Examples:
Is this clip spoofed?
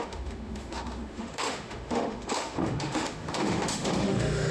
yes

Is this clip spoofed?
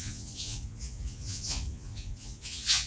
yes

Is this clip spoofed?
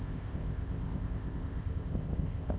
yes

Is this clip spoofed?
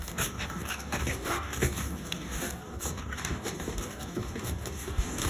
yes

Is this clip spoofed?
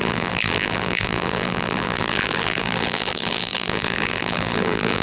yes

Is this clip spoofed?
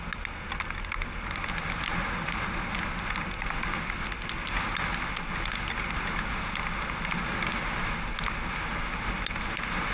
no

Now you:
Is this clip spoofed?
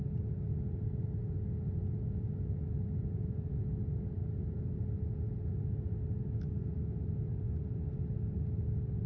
no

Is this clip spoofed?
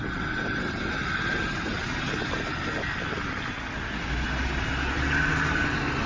no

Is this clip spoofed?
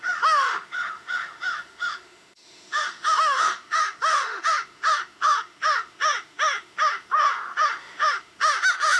yes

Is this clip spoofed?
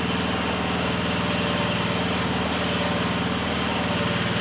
no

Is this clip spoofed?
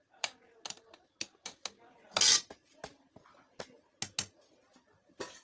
no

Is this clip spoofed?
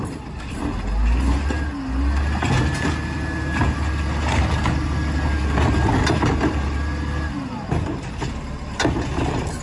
no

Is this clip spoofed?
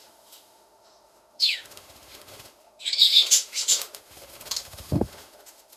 yes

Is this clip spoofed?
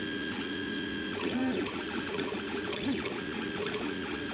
yes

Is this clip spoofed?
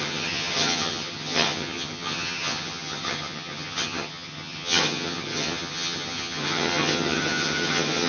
yes